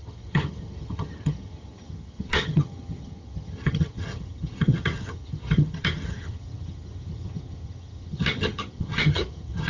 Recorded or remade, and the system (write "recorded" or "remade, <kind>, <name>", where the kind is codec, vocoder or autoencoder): remade, vocoder, HiFi-GAN